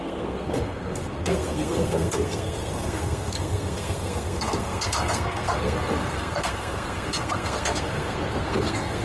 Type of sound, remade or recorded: remade